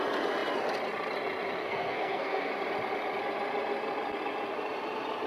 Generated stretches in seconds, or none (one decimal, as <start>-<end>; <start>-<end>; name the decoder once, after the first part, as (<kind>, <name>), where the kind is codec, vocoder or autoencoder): 1.6-2.5 (codec, SNAC)